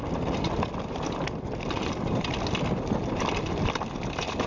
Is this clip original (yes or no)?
yes